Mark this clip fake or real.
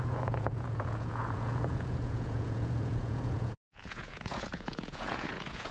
fake